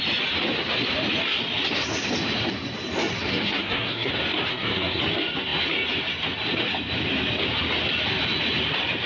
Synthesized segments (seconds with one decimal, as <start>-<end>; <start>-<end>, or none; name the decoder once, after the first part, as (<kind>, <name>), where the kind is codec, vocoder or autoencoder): 3.3-4.1 (codec, SNAC); 4.5-5.0

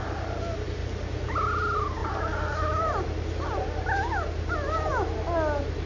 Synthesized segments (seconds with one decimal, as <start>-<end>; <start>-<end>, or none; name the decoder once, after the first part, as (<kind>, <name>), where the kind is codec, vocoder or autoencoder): 2.0-2.8 (codec, DAC)

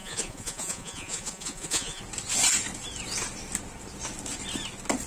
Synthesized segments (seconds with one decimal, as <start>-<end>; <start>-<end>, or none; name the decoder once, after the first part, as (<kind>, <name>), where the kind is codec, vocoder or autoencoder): 0.0-2.0 (vocoder, Vocos)

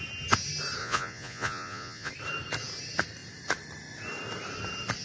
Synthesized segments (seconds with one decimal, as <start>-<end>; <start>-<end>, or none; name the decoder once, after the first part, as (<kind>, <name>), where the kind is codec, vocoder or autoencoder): 0.8-2.1 (vocoder, Vocos)

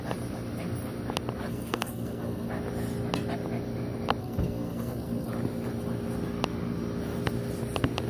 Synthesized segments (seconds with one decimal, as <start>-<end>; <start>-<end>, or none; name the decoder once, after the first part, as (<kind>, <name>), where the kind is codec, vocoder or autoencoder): 1.5-2.5 (codec, SNAC); 4.2-5.3

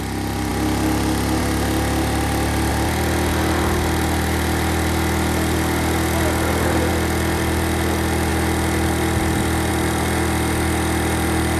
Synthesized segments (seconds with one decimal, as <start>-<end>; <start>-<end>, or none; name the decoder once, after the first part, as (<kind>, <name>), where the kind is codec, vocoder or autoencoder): none

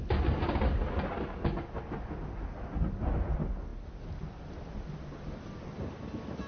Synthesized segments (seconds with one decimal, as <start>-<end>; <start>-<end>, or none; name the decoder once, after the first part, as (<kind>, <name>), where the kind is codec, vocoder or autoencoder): none

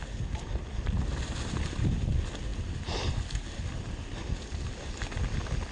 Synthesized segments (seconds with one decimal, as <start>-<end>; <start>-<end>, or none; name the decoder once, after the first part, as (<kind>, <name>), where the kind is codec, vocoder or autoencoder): none